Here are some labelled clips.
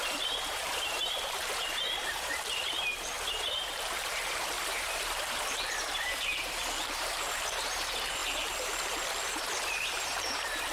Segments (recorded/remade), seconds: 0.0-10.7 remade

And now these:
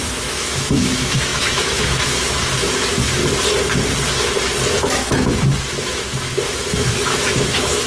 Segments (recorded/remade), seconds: 0.0-3.2 remade; 3.2-4.8 recorded; 4.8-7.9 remade

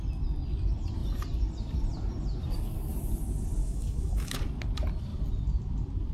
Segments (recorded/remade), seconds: 0.0-3.6 recorded; 3.6-4.4 remade; 4.4-6.1 recorded

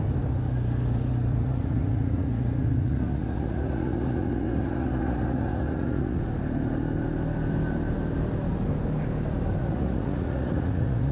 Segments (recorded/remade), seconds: 0.0-1.3 recorded; 1.3-6.2 remade; 6.2-9.6 recorded; 9.6-11.1 remade